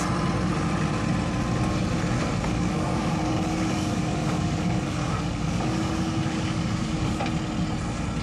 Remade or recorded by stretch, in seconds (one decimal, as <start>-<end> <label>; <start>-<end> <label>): 0.0-2.3 recorded; 2.3-7.2 remade; 7.2-8.2 recorded

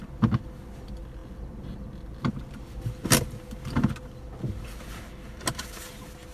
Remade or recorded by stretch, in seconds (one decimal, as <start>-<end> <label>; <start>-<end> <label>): 0.0-6.3 recorded

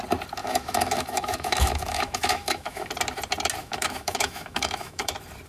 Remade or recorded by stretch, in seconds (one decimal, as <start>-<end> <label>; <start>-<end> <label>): 0.0-0.4 recorded; 0.4-2.9 remade; 2.9-3.6 recorded; 3.6-5.1 remade; 5.1-5.5 recorded

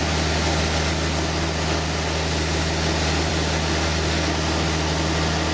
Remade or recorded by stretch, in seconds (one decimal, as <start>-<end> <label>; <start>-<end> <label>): 0.0-5.5 recorded

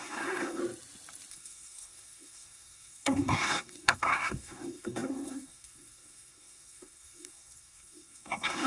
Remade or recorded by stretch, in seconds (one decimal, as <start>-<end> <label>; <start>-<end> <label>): 0.0-0.6 remade; 0.6-1.3 recorded; 1.3-8.7 remade